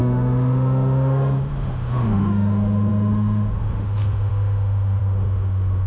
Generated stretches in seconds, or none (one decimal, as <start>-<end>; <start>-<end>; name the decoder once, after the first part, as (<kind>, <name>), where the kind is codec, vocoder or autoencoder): 0.0-5.9 (autoencoder, DAC-VAE)